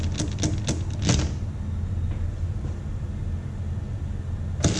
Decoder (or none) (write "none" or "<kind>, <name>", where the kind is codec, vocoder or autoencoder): none